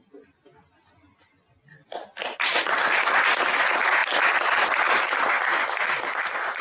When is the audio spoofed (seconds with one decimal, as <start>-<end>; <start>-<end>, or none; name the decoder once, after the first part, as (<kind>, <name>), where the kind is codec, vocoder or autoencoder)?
none